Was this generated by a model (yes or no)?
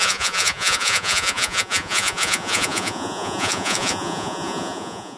yes